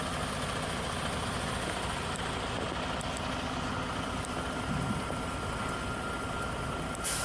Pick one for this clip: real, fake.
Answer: real